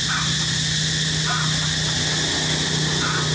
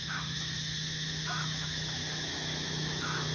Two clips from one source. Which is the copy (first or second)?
second